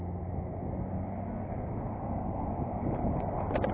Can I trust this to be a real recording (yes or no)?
yes